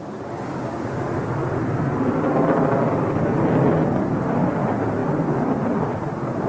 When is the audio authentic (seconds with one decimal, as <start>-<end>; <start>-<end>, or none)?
0.0-6.5